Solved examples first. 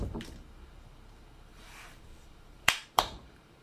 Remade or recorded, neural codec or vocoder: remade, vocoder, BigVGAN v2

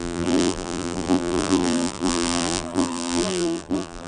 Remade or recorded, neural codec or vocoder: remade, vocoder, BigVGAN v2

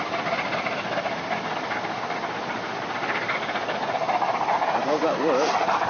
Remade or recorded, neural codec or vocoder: remade, vocoder, BigVGAN v2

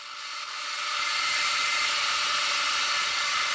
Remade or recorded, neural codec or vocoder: recorded